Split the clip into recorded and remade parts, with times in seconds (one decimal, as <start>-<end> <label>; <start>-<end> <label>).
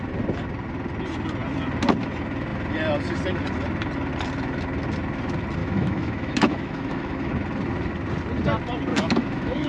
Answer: 0.0-5.6 recorded; 5.6-7.3 remade; 7.3-8.9 recorded; 8.9-9.7 remade